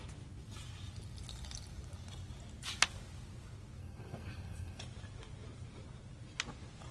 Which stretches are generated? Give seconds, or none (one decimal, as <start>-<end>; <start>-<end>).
3.8-4.8